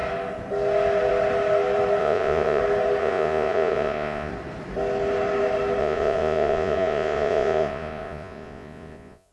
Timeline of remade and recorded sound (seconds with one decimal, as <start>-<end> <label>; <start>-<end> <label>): 0.0-2.0 recorded; 2.0-2.6 remade; 2.6-3.0 recorded; 3.0-4.3 remade; 4.3-5.8 recorded; 5.8-9.3 remade